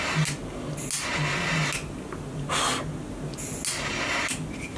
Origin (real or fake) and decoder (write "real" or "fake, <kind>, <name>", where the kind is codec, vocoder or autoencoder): real